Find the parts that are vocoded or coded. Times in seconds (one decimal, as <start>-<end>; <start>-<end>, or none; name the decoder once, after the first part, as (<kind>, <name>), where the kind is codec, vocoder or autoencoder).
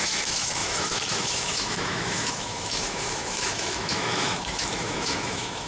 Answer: 0.0-5.7 (autoencoder, DAC-VAE)